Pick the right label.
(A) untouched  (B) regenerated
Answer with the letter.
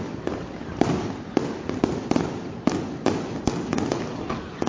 A